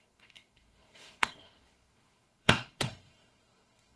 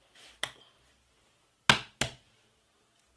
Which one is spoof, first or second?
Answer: first